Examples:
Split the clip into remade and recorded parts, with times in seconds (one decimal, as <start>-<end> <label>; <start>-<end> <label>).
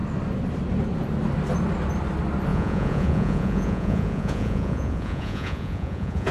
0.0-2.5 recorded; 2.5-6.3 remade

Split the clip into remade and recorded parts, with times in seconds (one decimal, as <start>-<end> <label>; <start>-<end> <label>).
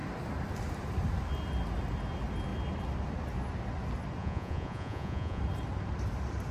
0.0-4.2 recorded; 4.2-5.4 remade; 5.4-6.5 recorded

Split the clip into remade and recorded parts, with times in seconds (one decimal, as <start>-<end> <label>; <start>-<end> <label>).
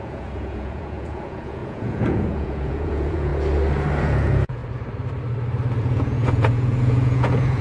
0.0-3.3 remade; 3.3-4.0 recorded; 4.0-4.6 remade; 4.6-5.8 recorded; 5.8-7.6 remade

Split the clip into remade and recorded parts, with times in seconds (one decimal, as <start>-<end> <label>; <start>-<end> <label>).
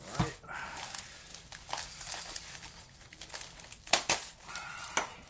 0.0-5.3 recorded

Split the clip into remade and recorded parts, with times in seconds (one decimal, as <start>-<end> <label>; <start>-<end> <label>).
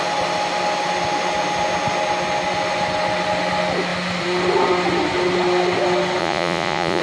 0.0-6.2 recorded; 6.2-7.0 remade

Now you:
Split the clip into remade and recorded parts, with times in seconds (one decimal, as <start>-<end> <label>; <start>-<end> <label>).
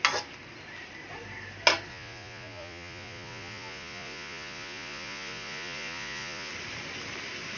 0.0-1.9 recorded; 1.9-6.5 remade; 6.5-7.6 recorded